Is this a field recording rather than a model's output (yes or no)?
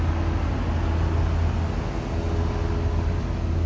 yes